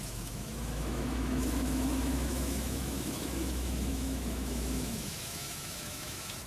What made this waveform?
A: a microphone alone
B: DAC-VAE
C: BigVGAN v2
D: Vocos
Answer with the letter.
B